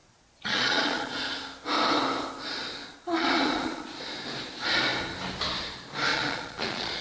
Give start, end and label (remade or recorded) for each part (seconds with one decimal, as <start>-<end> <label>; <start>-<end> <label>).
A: 0.0-1.3 remade; 1.3-2.8 recorded; 2.8-4.0 remade; 4.0-6.1 recorded; 6.1-7.0 remade